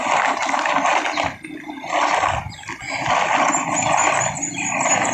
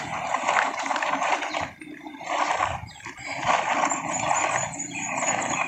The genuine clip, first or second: first